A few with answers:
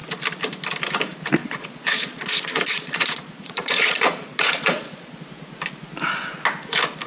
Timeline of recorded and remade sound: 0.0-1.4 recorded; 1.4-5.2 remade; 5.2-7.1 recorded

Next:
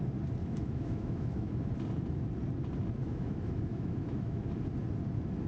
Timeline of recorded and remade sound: 0.0-0.4 recorded; 0.4-1.7 remade; 1.7-3.0 recorded; 3.0-4.5 remade; 4.5-5.5 recorded

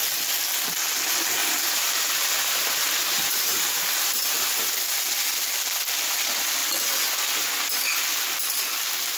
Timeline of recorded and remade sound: 0.0-1.4 recorded; 1.4-4.3 remade; 4.3-9.2 recorded